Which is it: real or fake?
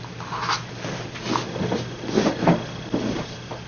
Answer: real